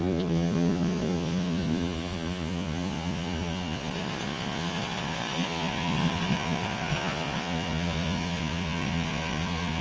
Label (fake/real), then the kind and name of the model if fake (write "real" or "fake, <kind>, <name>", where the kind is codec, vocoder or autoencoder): fake, vocoder, Vocos